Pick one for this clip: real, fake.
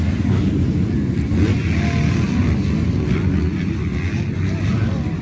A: real